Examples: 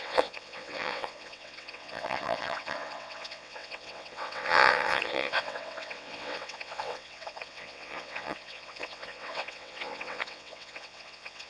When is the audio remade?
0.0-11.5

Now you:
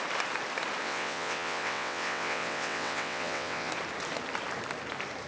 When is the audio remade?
0.8-3.7